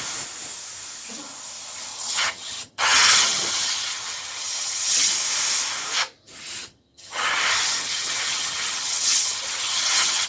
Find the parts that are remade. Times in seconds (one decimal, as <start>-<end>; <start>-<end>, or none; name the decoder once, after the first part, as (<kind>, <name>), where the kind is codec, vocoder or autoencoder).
1.9-5.1 (vocoder, HiFi-GAN); 6.6-10.3